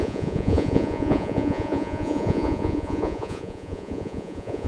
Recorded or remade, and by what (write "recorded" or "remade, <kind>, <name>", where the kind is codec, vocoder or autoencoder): remade, vocoder, Vocos